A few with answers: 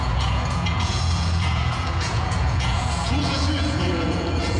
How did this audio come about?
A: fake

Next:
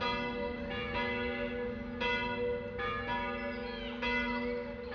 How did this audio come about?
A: real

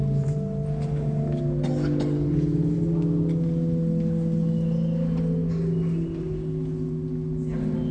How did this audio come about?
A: real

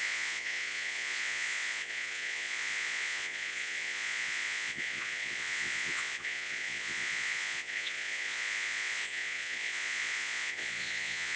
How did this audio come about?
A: fake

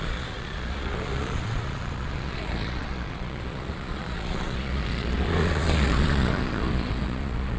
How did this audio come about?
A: fake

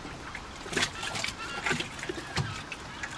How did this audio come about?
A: real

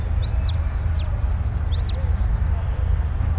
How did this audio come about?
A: real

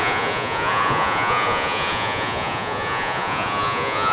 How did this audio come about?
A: fake